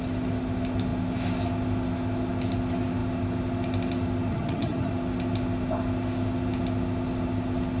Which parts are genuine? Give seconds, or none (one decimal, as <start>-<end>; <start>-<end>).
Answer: 0.0-4.3; 4.9-7.8

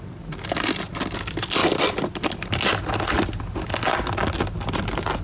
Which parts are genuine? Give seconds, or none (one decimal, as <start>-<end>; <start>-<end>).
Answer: 0.0-5.2

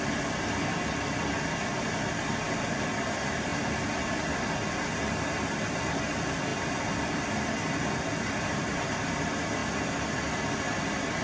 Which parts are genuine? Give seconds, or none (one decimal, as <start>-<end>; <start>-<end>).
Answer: 0.0-11.2

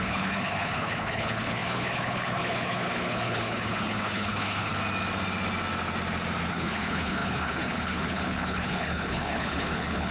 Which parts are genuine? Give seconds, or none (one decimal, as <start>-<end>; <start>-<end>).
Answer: 4.7-6.5